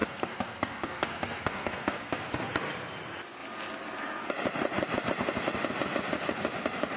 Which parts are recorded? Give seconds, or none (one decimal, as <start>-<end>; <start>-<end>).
2.3-7.0